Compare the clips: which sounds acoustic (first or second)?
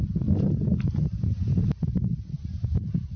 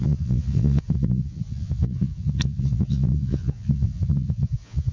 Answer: first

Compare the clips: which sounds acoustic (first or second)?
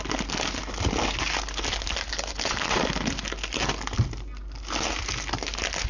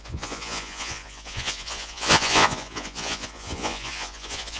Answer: first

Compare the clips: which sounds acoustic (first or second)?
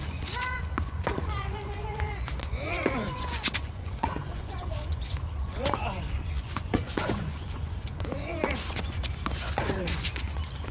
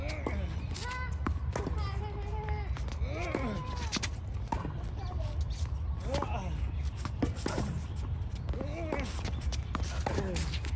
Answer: second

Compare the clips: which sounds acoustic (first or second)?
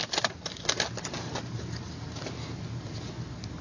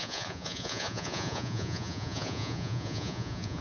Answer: first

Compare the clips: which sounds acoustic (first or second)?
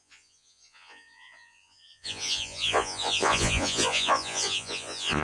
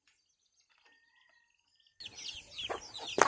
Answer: second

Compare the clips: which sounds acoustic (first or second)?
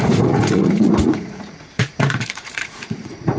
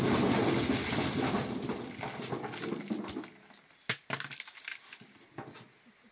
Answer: second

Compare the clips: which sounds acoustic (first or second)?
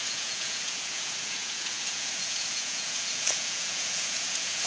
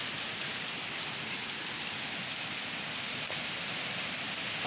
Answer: second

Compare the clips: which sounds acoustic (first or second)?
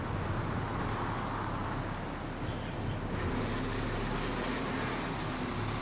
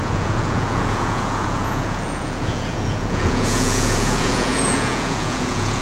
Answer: first